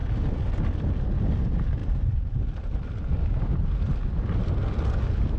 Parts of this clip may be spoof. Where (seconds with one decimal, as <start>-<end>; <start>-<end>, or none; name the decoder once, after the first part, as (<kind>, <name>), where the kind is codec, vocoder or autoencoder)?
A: 1.8-2.4 (vocoder, BigVGAN v2)